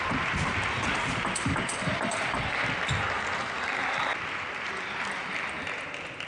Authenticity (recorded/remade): recorded